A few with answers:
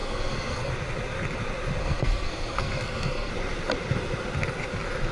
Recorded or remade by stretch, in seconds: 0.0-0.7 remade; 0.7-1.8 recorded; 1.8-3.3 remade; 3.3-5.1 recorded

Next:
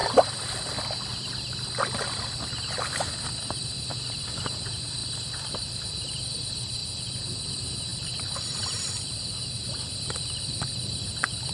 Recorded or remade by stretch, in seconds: 0.0-1.2 recorded; 1.2-6.8 remade; 6.8-7.4 recorded; 7.4-11.5 remade

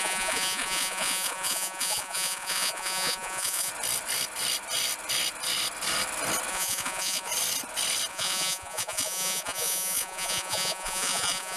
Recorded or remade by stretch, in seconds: 0.0-3.7 remade; 3.7-6.5 recorded; 6.5-7.3 remade; 7.3-8.1 recorded; 8.1-11.6 remade

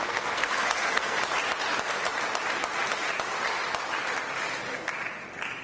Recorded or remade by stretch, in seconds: 0.0-1.2 remade; 1.2-5.6 recorded

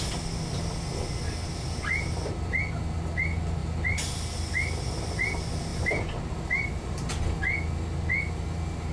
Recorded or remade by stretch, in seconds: 0.0-3.6 recorded; 3.6-4.1 remade; 4.1-5.7 recorded; 5.7-7.1 remade; 7.1-8.9 recorded

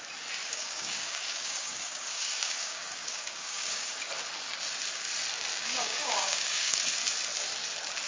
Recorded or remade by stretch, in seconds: 0.0-0.4 recorded; 0.4-4.1 remade; 4.1-5.5 recorded; 5.5-6.8 remade; 6.8-8.1 recorded

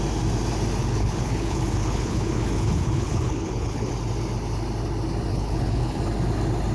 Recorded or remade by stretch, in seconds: 0.0-0.8 recorded; 0.8-3.9 remade; 3.9-5.3 recorded; 5.3-6.0 remade; 6.0-6.7 recorded

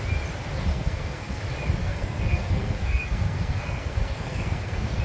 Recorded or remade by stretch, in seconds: 0.0-0.7 recorded; 0.7-1.4 remade; 1.4-1.8 recorded; 1.8-5.0 remade